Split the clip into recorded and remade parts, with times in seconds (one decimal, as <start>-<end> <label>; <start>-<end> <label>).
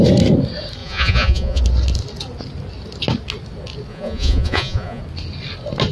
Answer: 0.0-0.8 recorded; 0.8-1.6 remade; 1.6-3.9 recorded; 3.9-5.0 remade; 5.0-5.9 recorded